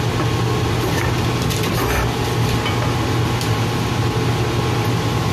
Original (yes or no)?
yes